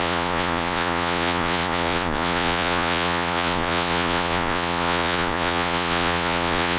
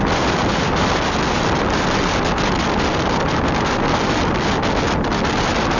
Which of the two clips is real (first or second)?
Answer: second